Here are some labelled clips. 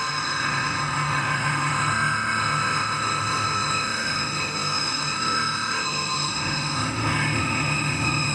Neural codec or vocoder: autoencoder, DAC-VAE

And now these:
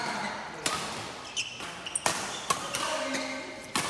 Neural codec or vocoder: none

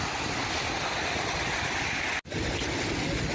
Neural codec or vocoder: none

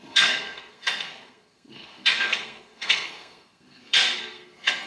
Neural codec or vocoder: codec, SNAC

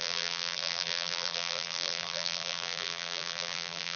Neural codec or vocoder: vocoder, BigVGAN v2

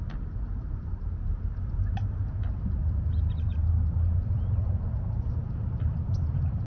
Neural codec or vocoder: vocoder, BigVGAN v2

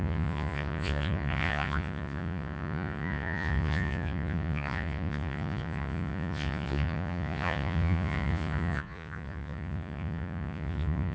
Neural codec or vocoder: vocoder, Vocos